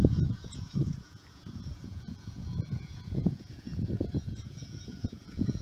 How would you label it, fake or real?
fake